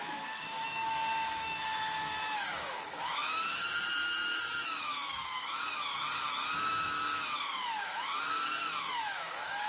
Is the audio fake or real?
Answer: fake